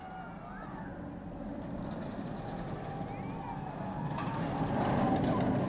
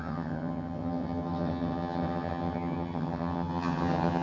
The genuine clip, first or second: first